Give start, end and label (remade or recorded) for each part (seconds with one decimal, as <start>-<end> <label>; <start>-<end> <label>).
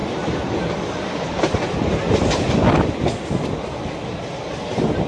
0.0-3.1 remade; 3.1-5.1 recorded